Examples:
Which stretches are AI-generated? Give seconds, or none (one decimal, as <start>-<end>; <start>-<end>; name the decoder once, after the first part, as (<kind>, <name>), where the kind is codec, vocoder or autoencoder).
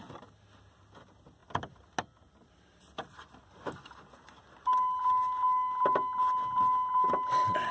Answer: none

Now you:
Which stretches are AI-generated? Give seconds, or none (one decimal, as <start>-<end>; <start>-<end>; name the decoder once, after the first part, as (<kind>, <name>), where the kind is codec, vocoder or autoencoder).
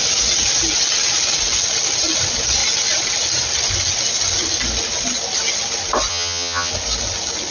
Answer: 6.1-6.7 (vocoder, HiFi-GAN)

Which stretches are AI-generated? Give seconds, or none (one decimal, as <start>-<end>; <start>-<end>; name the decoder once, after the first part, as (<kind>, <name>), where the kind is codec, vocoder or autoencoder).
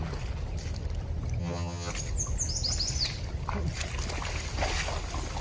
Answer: 1.4-1.9 (vocoder, HiFi-GAN)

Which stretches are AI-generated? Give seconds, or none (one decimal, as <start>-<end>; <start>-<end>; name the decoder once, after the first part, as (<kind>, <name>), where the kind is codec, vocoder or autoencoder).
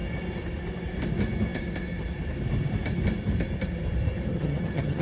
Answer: 4.3-5.0 (vocoder, HiFi-GAN)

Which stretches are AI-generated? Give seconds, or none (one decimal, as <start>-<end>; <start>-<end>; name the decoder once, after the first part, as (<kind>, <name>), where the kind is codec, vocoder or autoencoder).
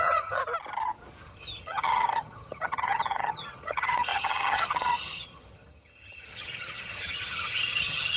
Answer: 0.0-0.4 (vocoder, HiFi-GAN); 1.2-8.2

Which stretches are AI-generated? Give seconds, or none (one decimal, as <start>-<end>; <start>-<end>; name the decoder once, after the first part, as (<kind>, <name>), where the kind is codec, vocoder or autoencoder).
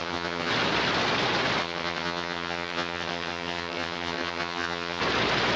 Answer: 0.0-0.5 (vocoder, HiFi-GAN); 1.6-5.0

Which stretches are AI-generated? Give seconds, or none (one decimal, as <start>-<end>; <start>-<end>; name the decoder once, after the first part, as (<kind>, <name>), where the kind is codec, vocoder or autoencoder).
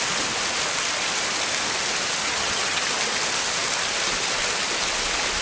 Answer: 2.2-2.8 (vocoder, HiFi-GAN)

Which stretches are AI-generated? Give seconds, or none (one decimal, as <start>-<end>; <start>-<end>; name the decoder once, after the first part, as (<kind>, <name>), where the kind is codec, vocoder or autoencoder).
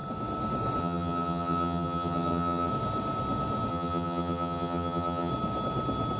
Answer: 0.8-2.7 (vocoder, HiFi-GAN); 3.7-5.3